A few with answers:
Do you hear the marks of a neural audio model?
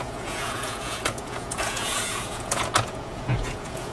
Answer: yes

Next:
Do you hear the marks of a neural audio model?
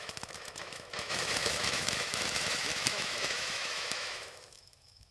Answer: yes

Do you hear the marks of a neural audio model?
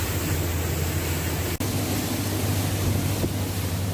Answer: no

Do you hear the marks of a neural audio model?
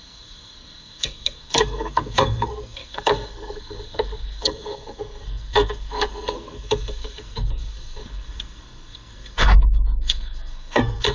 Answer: yes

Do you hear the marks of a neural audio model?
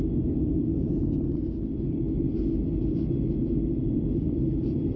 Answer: no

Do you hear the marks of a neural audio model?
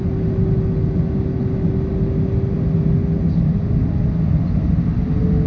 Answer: no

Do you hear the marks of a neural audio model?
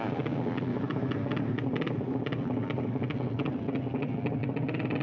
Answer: no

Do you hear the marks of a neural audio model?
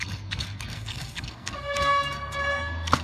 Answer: yes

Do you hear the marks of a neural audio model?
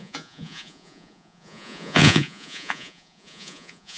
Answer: yes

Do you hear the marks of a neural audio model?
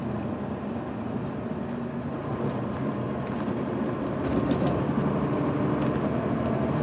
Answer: no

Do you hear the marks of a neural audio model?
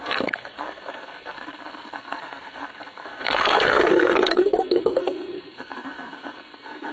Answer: yes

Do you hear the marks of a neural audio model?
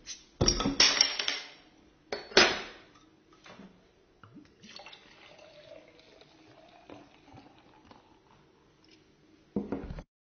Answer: no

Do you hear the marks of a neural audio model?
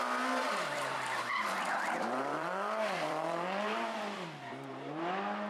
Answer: yes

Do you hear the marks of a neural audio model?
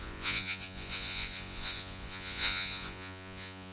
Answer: yes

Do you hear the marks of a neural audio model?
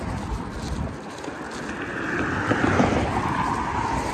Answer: no